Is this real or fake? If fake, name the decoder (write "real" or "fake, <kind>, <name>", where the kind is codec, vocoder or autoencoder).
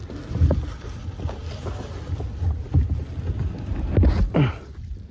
real